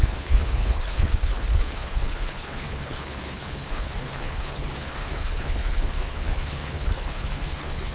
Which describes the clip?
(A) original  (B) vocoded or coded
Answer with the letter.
B